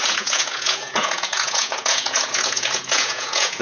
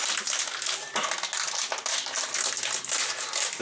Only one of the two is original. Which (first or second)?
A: second